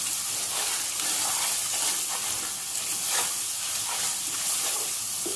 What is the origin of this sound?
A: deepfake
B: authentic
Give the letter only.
B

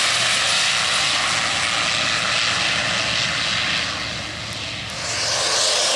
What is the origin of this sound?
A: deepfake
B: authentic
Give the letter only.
B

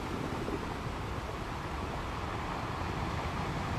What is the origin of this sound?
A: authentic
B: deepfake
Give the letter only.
A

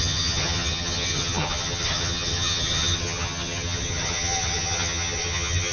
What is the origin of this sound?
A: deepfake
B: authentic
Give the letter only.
A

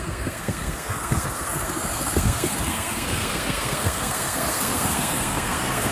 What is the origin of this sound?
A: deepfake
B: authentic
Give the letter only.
A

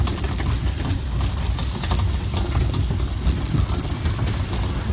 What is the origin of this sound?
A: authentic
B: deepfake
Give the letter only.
A